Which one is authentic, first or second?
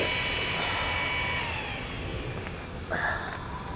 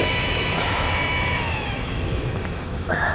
first